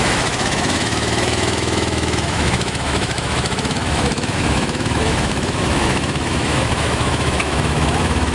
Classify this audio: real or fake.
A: fake